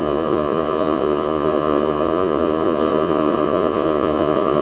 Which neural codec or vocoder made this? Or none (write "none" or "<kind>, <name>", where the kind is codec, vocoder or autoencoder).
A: vocoder, Vocos